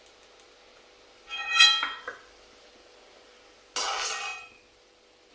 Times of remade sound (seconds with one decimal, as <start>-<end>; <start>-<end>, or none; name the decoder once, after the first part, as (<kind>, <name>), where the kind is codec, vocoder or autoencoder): 1.3-2.7 (vocoder, BigVGAN v2); 4.3-5.3